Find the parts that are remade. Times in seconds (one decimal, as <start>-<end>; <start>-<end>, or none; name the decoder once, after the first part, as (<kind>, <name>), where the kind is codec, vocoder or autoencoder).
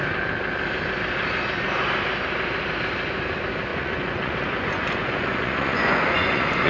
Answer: 3.7-6.7 (vocoder, Vocos)